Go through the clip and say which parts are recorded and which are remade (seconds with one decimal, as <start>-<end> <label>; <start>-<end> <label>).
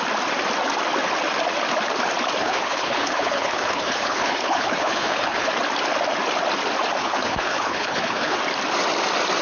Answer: 0.0-2.4 recorded; 2.4-5.5 remade; 5.5-7.0 recorded; 7.0-8.4 remade; 8.4-9.4 recorded